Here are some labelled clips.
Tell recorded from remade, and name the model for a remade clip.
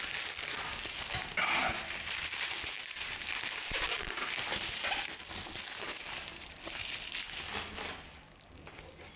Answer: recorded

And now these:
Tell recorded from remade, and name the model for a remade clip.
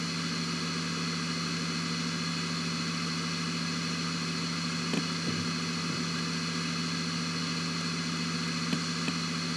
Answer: recorded